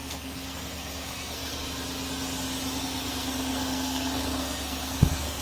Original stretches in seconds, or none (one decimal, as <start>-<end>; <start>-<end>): 1.6-2.8